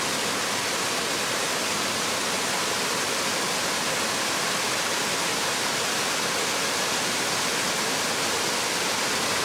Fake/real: real